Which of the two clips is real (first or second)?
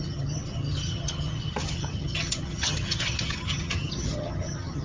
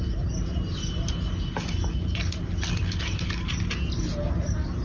second